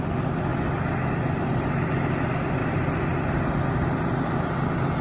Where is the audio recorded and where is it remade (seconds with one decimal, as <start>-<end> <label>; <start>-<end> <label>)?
0.0-0.5 remade; 0.5-1.1 recorded; 1.1-5.0 remade